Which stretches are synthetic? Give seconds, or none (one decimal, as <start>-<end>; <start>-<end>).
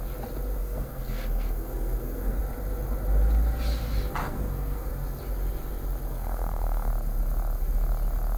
0.6-2.4; 4.2-4.9; 6.1-6.9